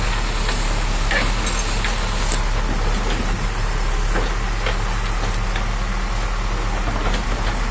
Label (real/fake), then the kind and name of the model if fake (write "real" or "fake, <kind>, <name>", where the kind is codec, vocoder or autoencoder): real